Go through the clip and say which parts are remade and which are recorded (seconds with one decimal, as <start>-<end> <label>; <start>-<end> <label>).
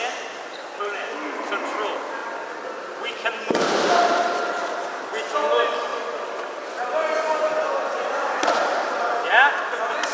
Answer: 0.0-2.2 recorded; 2.2-5.4 remade; 5.4-5.9 recorded; 5.9-6.9 remade; 6.9-10.1 recorded